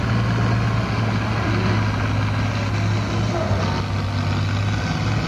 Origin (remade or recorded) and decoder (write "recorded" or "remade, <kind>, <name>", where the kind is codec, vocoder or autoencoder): recorded